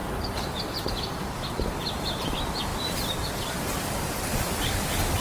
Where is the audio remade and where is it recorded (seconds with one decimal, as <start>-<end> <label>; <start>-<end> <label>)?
0.0-1.1 remade; 1.1-2.2 recorded; 2.2-5.2 remade

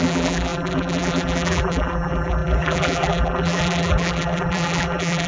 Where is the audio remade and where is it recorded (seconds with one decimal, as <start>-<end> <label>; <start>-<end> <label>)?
0.0-5.3 remade

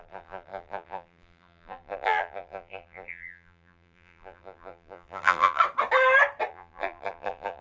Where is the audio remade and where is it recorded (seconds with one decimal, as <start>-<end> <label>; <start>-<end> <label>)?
0.0-5.6 remade; 5.6-6.5 recorded; 6.5-7.6 remade

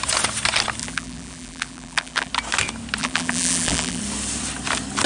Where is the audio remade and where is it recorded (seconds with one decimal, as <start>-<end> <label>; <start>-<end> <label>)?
0.0-0.8 recorded; 0.8-2.3 remade; 2.3-3.0 recorded; 3.0-4.0 remade; 4.0-5.1 recorded

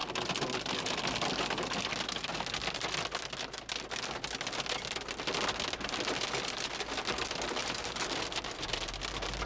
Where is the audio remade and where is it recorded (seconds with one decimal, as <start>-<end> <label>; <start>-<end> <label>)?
0.0-7.6 recorded; 7.6-8.1 remade; 8.1-9.5 recorded